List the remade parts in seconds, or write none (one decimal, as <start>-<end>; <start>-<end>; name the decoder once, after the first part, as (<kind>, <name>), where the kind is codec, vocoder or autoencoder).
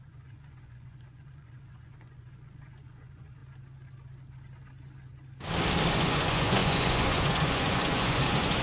0.0-3.4 (vocoder, Vocos); 5.9-8.6